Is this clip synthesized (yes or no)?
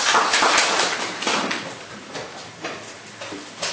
no